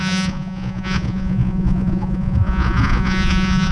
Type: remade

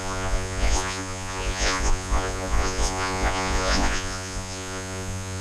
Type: remade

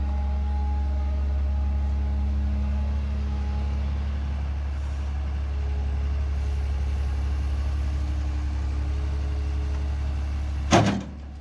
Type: recorded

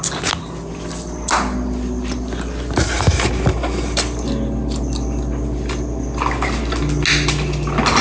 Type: recorded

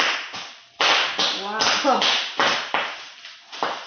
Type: recorded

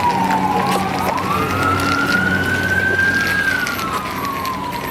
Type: recorded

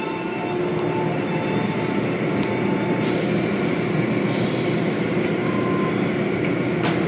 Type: recorded